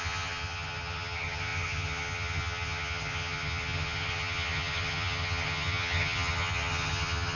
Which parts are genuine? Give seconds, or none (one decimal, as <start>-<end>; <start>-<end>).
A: none